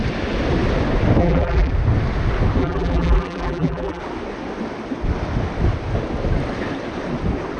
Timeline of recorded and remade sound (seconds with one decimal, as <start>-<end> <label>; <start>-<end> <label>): 0.0-1.2 recorded; 1.2-1.7 remade; 1.7-2.6 recorded; 2.6-4.0 remade; 4.0-7.6 recorded